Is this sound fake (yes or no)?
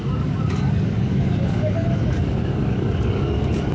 yes